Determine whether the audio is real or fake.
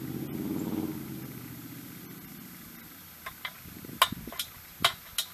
real